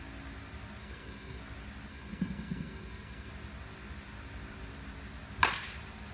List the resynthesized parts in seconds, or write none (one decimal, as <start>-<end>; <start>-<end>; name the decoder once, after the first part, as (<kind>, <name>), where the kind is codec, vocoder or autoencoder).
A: 0.8-1.4 (codec, SNAC); 1.9-3.3